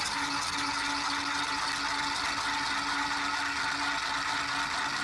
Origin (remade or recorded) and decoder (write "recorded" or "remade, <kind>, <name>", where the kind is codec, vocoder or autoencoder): recorded